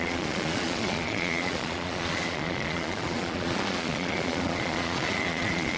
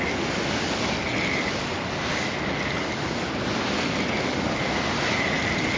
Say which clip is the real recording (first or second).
second